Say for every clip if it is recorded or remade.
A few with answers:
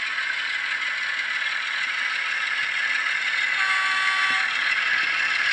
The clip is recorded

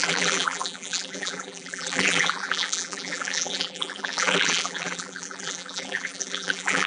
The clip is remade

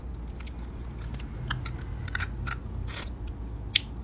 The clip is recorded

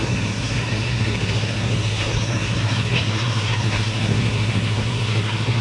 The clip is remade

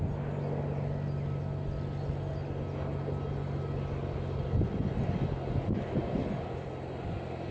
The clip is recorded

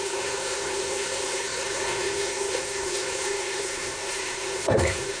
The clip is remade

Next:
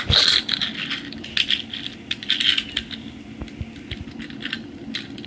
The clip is recorded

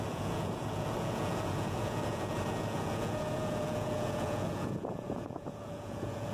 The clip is remade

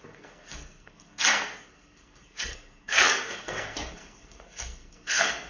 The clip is remade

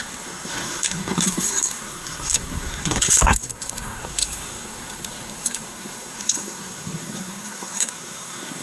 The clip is remade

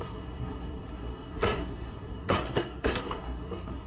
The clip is remade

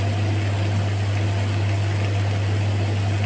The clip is recorded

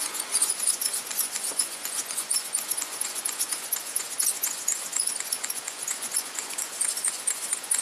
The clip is remade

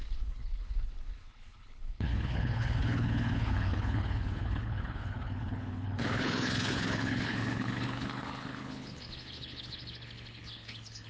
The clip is remade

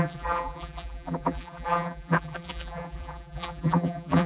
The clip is remade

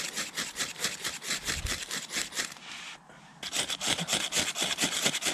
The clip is remade